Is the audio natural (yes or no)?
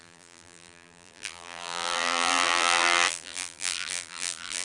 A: no